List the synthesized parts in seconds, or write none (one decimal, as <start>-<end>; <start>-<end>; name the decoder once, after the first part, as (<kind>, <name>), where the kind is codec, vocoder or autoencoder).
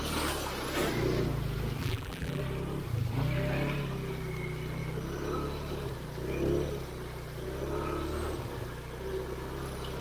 1.8-2.4 (vocoder, BigVGAN v2)